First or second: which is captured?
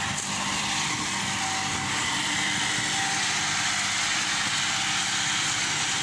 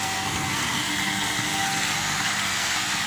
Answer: first